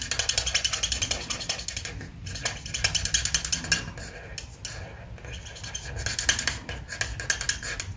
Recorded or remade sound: recorded